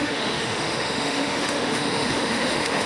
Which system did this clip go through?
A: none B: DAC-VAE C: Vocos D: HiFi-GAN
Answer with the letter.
B